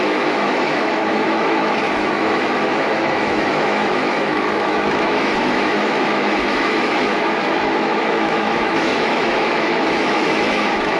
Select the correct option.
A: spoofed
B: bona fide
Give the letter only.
A